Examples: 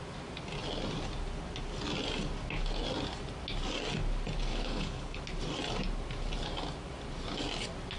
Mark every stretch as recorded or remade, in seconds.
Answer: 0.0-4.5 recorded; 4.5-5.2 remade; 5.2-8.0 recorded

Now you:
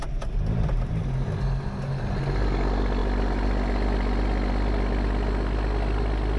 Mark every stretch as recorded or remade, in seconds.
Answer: 0.0-1.0 remade; 1.0-6.4 recorded

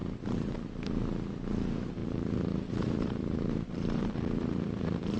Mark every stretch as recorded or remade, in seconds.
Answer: 0.0-2.0 recorded; 2.0-5.2 remade

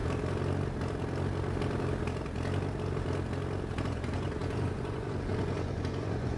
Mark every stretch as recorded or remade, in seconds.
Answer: 0.0-3.8 recorded; 3.8-6.4 remade

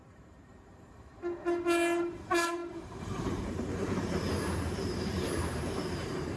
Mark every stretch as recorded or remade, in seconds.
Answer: 0.0-1.1 remade; 1.1-2.0 recorded; 2.0-6.4 remade